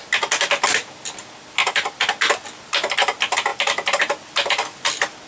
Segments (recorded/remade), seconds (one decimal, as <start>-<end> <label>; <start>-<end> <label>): 0.0-5.3 recorded